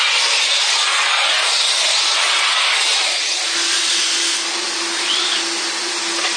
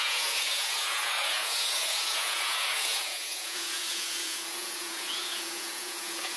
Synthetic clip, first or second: second